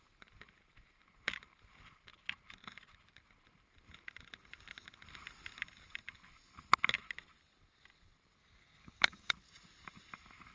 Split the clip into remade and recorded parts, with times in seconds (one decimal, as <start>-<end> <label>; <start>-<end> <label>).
0.0-8.4 recorded; 8.4-9.3 remade; 9.3-10.5 recorded